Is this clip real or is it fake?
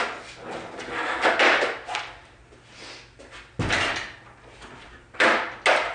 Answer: real